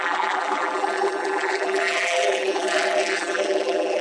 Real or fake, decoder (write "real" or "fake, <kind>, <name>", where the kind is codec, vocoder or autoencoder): fake, vocoder, BigVGAN v2